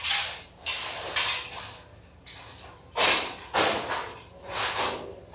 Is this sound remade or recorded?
recorded